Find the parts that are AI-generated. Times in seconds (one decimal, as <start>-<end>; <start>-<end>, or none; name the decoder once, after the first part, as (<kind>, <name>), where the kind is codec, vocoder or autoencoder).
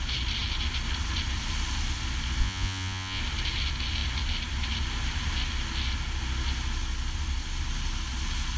2.4-3.2 (vocoder, Vocos)